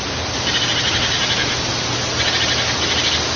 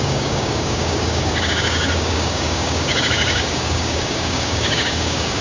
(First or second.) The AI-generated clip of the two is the second